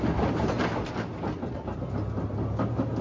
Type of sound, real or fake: real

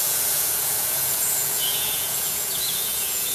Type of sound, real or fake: fake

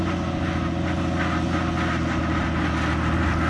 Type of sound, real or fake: real